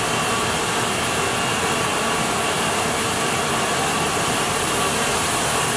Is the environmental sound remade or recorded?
recorded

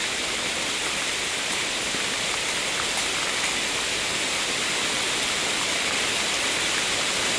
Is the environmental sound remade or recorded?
recorded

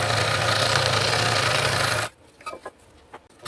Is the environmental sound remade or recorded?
recorded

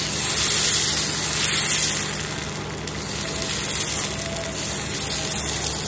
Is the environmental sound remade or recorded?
recorded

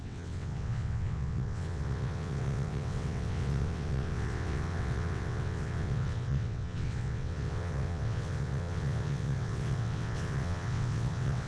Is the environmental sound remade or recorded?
remade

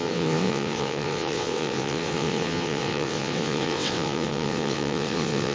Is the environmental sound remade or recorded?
remade